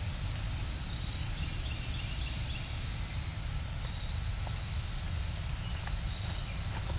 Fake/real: real